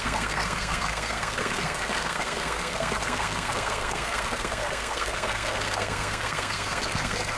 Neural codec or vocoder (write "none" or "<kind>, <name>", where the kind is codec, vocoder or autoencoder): codec, SNAC